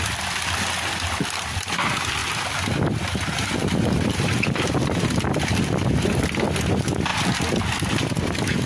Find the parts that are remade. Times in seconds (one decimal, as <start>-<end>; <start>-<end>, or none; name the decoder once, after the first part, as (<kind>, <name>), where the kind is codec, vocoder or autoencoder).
2.2-6.2 (vocoder, BigVGAN v2)

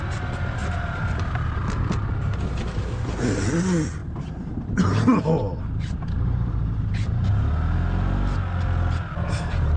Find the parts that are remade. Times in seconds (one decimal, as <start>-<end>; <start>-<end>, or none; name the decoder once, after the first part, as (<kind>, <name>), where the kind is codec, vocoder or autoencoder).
0.6-1.6 (vocoder, BigVGAN v2); 4.0-7.3

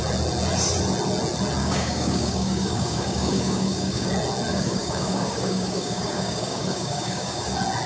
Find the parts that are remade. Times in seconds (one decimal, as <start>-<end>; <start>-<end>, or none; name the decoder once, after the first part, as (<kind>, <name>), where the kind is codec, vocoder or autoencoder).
1.6-4.1 (codec, DAC); 4.5-7.5